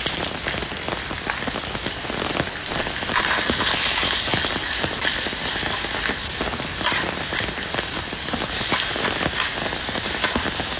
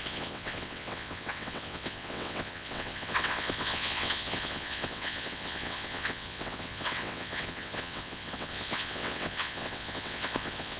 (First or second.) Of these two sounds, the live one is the first